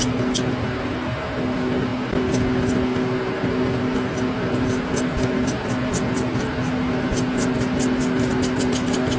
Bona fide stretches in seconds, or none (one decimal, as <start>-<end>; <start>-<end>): 0.0-9.2